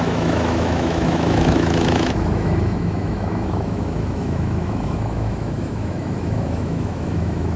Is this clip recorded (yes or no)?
no